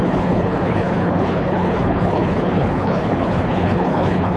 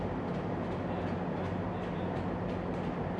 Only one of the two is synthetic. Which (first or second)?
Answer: first